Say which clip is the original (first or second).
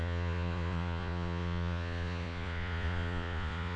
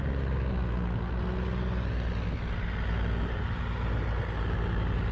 second